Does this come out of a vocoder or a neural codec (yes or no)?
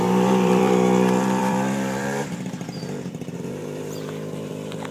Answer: yes